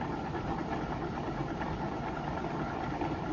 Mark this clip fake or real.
real